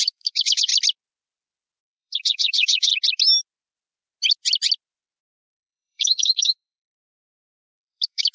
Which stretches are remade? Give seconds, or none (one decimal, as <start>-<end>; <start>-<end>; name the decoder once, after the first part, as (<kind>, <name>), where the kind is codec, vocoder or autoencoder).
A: 0.0-0.7 (codec, DAC); 1.8-2.9; 5.2-8.3